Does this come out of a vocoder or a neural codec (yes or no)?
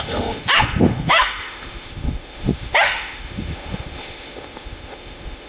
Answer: yes